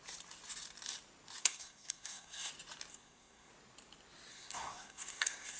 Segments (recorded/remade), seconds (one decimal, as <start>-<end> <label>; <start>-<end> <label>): 0.0-1.4 recorded; 1.4-2.5 remade; 2.5-2.9 recorded; 2.9-3.5 remade; 3.5-4.3 recorded; 4.3-5.6 remade